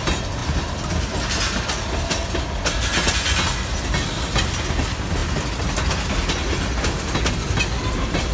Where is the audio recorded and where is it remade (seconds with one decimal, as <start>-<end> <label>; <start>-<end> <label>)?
0.0-8.3 recorded